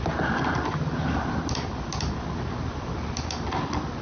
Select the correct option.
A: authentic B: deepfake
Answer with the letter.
A